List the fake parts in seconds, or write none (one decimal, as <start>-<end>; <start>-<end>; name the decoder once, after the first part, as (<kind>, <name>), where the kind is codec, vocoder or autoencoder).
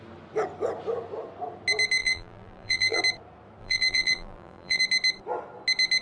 2.0-3.0 (vocoder, BigVGAN v2); 3.6-4.8